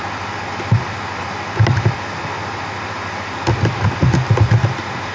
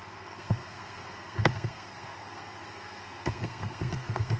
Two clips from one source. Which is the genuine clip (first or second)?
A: first